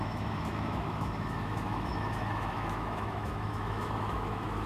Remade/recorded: remade